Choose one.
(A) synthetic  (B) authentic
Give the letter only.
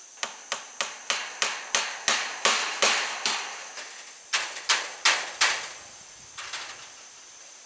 B